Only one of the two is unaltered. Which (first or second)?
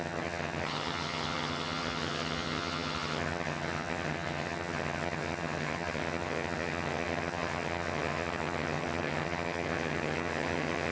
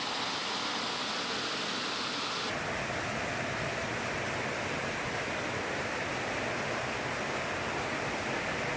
second